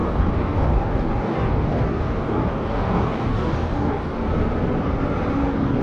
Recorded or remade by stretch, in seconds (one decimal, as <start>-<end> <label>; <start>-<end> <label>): 0.0-4.2 remade; 4.2-5.3 recorded; 5.3-5.8 remade